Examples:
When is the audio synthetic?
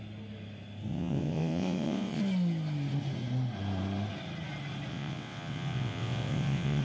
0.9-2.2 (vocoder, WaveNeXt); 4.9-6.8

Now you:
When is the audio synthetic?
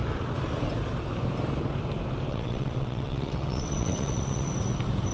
2.3-4.5 (vocoder, WaveNeXt)